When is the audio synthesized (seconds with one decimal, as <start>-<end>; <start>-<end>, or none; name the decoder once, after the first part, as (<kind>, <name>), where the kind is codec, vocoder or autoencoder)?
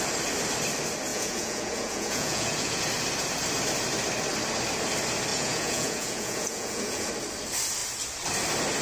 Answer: 1.1-2.8 (vocoder, Vocos); 5.3-7.1